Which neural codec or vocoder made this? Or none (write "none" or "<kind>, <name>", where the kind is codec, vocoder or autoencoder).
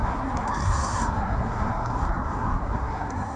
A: codec, SNAC